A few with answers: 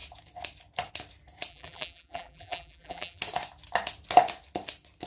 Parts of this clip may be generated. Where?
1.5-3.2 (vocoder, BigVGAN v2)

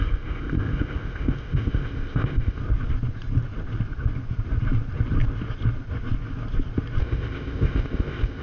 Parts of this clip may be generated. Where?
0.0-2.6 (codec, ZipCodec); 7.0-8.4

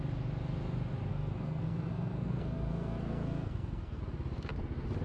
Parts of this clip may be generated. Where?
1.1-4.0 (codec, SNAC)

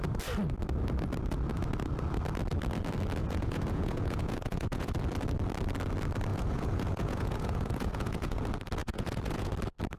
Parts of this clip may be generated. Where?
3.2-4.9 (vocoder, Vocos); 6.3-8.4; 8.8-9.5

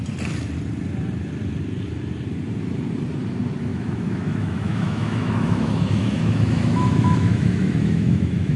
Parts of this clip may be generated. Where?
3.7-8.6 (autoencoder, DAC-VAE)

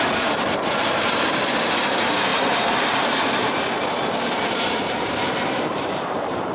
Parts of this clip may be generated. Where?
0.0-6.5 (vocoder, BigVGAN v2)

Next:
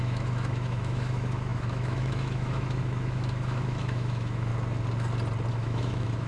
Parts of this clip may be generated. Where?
0.0-4.5 (autoencoder, DAC-VAE); 5.5-6.3